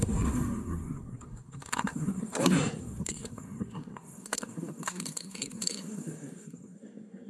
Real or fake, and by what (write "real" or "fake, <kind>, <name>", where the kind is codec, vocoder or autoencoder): fake, codec, SNAC